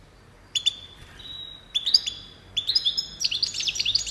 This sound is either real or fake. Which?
fake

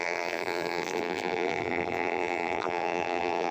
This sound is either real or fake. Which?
fake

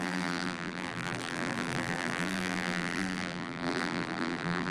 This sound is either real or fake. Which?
fake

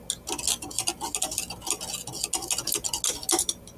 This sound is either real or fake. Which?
real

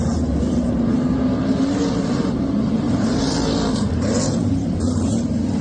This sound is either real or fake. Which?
fake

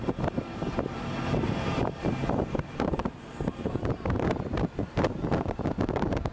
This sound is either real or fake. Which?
fake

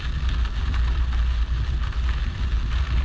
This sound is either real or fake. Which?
real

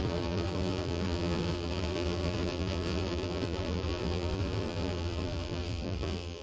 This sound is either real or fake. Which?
fake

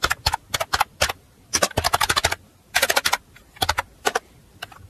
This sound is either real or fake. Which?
real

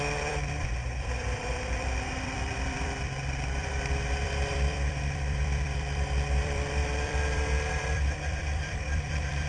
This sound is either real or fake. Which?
fake